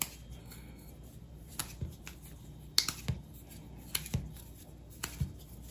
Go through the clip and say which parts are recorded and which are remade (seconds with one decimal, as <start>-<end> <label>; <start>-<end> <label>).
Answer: 0.0-0.4 recorded; 0.4-0.9 remade; 0.9-5.7 recorded